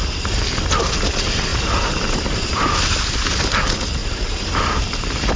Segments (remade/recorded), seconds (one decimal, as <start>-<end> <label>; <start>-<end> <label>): 0.0-1.5 recorded; 1.5-2.5 remade; 2.5-4.0 recorded; 4.0-4.8 remade; 4.8-5.4 recorded